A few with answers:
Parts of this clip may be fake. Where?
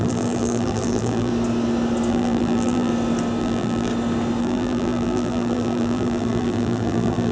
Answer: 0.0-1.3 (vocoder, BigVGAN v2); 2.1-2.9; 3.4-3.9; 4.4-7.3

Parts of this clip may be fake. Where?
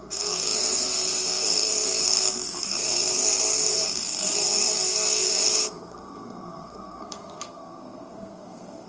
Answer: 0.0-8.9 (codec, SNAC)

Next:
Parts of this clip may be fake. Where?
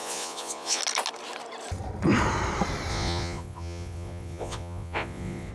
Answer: 0.0-0.8 (vocoder, Vocos); 2.9-5.5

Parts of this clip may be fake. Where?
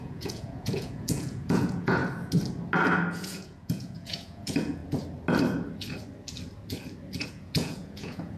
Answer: 0.0-2.0 (vocoder, Vocos); 3.1-4.8; 7.2-8.4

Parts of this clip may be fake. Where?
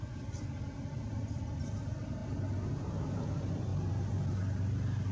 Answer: none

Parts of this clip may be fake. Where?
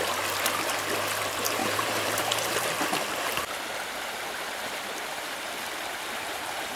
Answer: 1.6-2.8 (vocoder, BigVGAN v2); 5.1-6.8